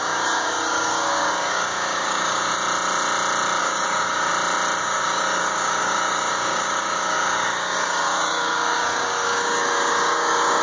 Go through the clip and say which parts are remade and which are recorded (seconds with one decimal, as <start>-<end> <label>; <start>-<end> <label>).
0.0-2.5 remade; 2.5-3.6 recorded; 3.6-4.3 remade; 4.3-4.8 recorded; 4.8-10.6 remade